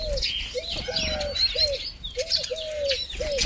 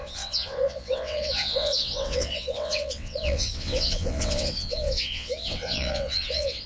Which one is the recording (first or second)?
first